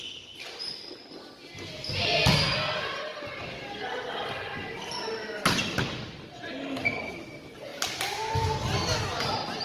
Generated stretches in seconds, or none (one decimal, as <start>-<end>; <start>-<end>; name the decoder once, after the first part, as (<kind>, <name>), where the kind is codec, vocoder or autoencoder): none